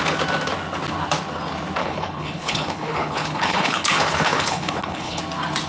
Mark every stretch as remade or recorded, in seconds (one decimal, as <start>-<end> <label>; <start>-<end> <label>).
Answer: 0.0-1.8 recorded; 1.8-5.2 remade; 5.2-5.7 recorded